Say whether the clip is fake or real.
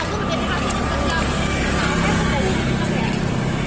real